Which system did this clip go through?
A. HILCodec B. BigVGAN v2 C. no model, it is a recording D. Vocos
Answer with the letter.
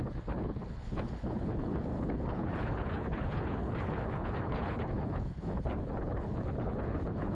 A